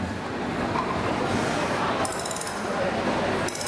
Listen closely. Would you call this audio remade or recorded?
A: remade